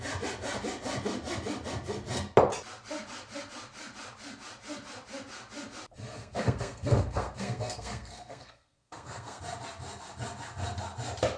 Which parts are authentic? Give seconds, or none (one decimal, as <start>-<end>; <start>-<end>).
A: 0.0-6.2; 9.4-11.4